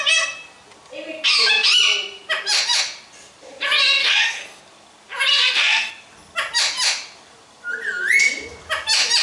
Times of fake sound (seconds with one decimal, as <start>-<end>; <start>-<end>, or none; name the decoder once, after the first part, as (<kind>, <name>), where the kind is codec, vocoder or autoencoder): 4.0-4.6 (codec, SNAC); 5.3-5.9